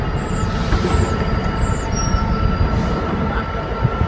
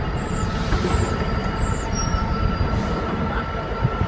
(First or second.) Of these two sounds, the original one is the first